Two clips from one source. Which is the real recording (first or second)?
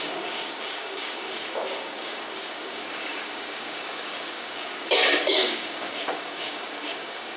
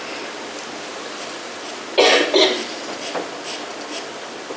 second